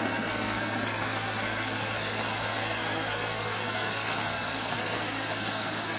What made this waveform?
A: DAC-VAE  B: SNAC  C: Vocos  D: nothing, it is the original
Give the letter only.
B